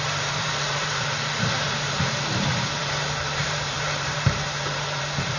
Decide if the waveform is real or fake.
fake